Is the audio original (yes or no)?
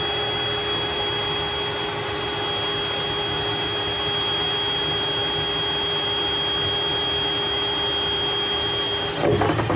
yes